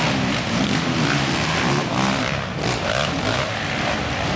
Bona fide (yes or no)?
yes